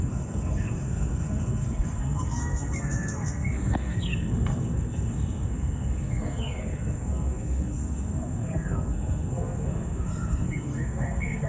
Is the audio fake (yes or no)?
yes